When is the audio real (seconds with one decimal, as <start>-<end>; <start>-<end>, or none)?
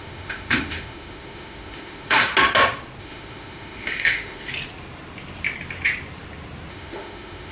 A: 2.3-3.0; 4.5-6.7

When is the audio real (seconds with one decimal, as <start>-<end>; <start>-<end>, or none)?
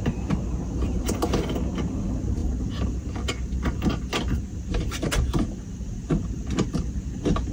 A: 0.0-7.5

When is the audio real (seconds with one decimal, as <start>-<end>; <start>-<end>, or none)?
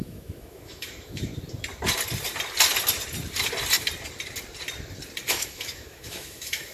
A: 1.3-5.3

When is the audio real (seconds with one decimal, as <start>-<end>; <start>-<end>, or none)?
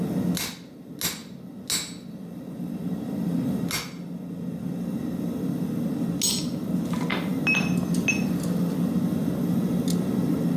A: 0.0-10.6